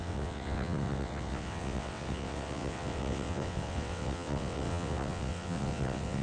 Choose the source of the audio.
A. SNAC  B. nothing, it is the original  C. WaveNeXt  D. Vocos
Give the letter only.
C